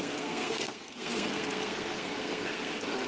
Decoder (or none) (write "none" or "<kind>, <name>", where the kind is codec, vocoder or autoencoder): codec, SNAC